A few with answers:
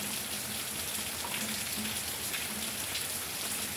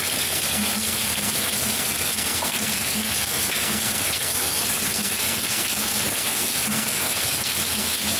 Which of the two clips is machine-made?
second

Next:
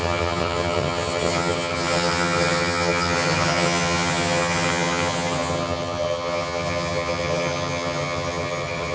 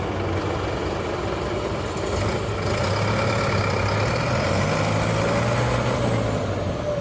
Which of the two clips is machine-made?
first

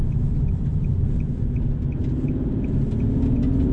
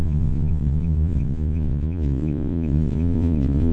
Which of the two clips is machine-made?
second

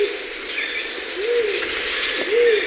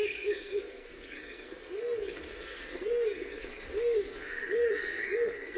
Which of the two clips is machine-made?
second